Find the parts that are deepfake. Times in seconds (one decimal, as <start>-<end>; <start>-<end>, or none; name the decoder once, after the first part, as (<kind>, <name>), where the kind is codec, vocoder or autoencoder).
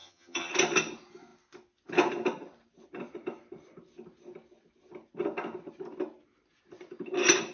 0.0-0.5 (vocoder, HiFi-GAN)